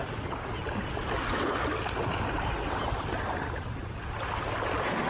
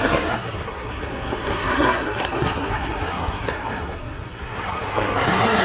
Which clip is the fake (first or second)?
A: second